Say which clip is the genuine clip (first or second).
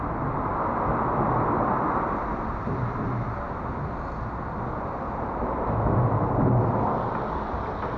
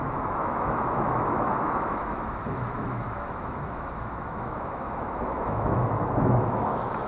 first